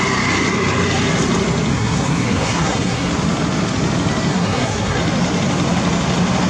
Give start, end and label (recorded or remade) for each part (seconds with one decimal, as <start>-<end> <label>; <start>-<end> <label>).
0.0-1.7 recorded; 1.7-3.1 remade; 3.1-4.3 recorded; 4.3-5.0 remade; 5.0-6.5 recorded

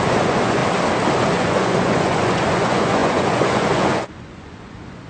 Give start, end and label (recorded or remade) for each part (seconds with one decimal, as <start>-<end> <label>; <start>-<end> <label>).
0.0-0.6 remade; 0.6-1.2 recorded; 1.2-5.1 remade

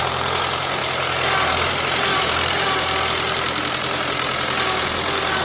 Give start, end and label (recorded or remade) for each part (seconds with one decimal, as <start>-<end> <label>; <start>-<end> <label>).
0.0-5.4 recorded

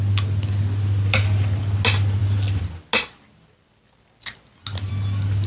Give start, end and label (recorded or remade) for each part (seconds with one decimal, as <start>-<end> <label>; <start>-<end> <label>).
0.0-5.5 recorded

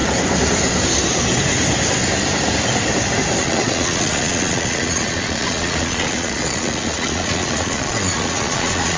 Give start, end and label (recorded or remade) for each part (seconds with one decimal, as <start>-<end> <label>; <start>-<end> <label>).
0.0-3.4 recorded; 3.4-9.0 remade

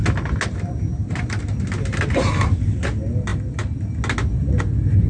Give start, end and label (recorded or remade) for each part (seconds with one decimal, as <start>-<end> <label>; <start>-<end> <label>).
0.0-5.1 recorded